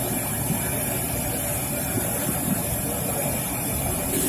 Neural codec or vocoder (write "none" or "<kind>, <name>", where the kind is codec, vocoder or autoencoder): vocoder, BigVGAN v2